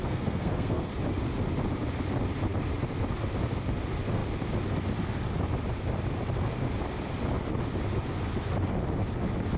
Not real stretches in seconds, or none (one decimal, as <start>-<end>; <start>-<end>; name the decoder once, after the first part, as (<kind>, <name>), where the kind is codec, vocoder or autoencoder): 0.0-0.9 (codec, SNAC)